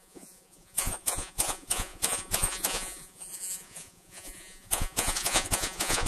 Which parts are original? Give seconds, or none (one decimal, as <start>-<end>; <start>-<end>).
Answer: none

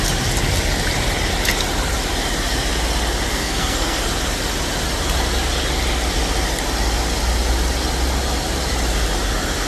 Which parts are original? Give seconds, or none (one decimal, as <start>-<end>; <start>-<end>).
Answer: 0.0-3.3; 4.1-9.7

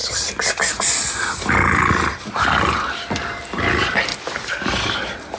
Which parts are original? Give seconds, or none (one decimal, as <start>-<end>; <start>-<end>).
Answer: 0.0-5.4

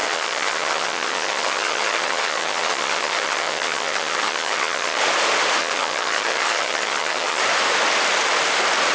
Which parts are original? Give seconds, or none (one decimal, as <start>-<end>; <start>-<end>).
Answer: 5.0-5.6; 7.4-8.9